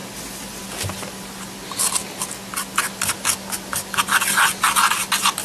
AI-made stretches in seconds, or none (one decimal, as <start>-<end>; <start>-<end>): none

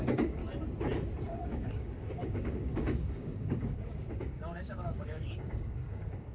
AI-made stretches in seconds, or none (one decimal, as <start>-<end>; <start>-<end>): 0.0-0.4; 1.2-6.3

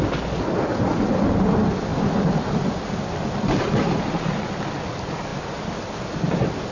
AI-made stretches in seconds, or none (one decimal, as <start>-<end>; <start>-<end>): 1.9-4.6

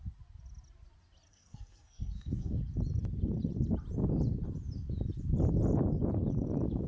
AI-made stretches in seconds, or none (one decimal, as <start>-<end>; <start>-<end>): 1.3-2.6

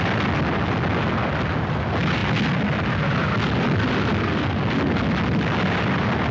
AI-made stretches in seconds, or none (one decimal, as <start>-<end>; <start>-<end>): none